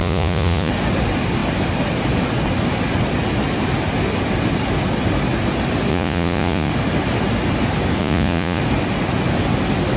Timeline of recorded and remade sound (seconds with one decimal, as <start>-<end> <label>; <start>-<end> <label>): 0.0-0.7 remade; 0.7-5.9 recorded; 5.9-6.7 remade; 6.7-8.0 recorded; 8.0-8.6 remade; 8.6-10.0 recorded